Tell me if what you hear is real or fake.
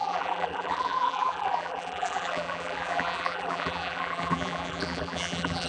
fake